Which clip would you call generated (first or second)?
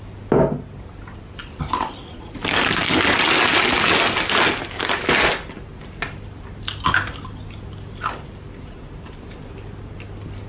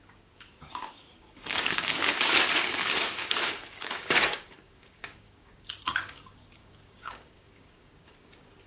second